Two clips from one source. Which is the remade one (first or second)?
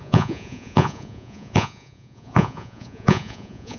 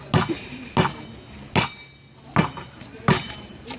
first